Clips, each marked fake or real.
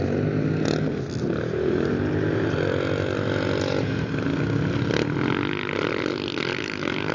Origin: real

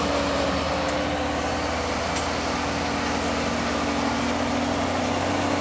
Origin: real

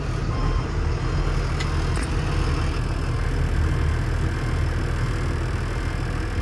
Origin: real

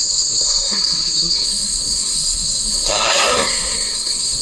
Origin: fake